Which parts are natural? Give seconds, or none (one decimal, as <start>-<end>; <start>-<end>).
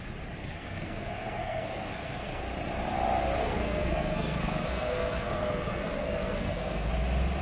0.0-0.4; 2.4-3.4; 6.9-7.4